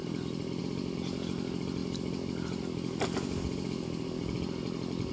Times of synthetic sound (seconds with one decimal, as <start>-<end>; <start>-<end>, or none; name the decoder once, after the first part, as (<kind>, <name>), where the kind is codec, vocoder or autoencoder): none